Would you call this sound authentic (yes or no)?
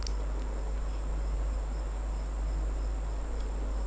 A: yes